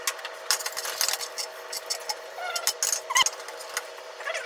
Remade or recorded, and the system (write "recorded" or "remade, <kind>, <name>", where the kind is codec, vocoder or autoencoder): recorded